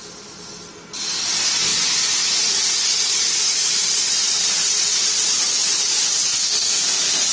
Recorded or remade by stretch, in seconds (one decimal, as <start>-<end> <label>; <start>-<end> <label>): 0.0-6.3 recorded; 6.3-6.8 remade; 6.8-7.3 recorded